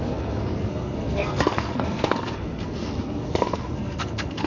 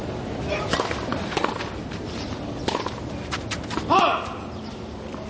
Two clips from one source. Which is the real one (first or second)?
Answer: second